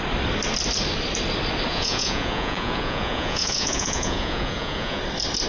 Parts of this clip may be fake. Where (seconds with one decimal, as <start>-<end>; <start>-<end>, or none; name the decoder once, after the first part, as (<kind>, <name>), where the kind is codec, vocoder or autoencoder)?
1.7-5.0 (vocoder, Vocos)